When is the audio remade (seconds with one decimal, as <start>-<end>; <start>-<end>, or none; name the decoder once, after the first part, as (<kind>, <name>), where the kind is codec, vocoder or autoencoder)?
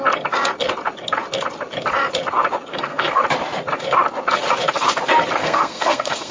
2.7-3.2 (codec, SNAC); 5.4-6.3